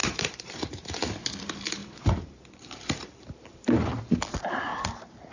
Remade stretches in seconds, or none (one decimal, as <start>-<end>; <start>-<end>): 0.0-1.1; 1.8-4.0; 4.7-5.3